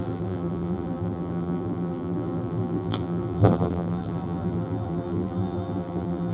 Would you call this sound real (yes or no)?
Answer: no